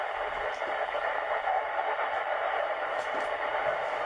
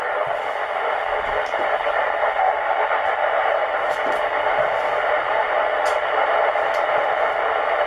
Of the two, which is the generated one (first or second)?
first